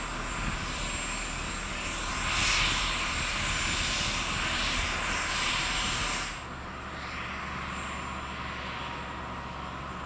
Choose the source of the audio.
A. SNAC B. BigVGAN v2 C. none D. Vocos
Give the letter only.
C